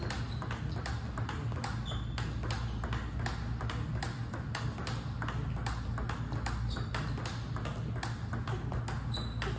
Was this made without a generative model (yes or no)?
yes